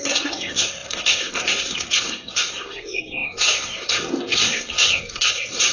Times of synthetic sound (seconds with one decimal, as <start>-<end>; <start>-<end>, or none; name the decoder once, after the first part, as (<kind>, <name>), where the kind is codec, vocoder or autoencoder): 0.0-5.7 (codec, SNAC)